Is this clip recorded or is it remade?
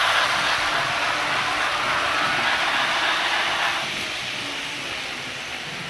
recorded